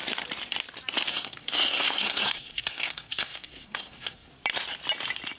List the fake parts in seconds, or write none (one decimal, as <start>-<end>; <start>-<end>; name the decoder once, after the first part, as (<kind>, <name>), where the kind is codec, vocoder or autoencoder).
1.1-4.3 (codec, SNAC)